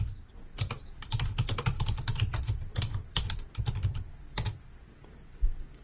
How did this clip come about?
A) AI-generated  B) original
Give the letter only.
B